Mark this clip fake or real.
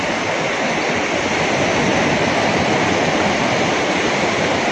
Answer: real